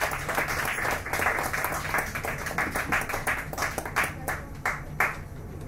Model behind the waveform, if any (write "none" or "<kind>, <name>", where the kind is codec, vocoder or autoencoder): none